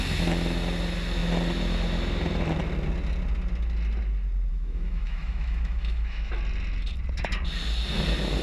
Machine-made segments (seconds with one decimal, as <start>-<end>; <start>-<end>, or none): 4.5-6.3